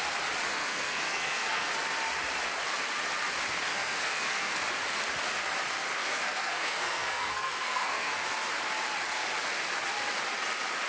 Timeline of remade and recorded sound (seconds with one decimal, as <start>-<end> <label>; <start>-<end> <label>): 0.0-0.5 recorded; 0.5-1.7 remade; 1.7-3.7 recorded; 3.7-4.6 remade; 4.6-6.0 recorded; 6.0-8.1 remade; 8.1-10.9 recorded

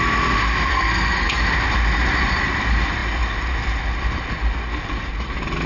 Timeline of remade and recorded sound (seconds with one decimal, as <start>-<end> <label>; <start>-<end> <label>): 0.0-0.7 recorded; 0.7-1.4 remade; 1.4-5.7 recorded